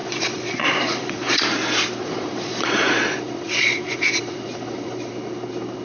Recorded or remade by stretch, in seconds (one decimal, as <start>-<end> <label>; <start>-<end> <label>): 0.0-1.4 remade; 1.4-2.0 recorded; 2.0-5.1 remade; 5.1-5.8 recorded